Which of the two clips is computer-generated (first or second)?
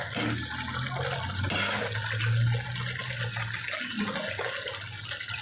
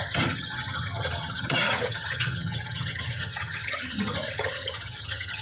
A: second